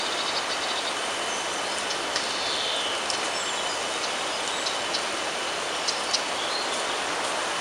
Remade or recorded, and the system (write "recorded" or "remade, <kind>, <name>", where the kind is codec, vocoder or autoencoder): recorded